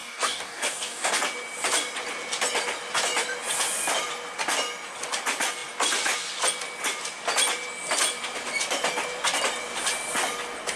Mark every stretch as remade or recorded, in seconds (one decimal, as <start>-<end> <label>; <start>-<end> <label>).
0.0-1.2 remade; 1.2-10.8 recorded